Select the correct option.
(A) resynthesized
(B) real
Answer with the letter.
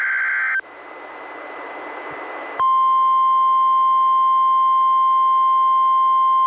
B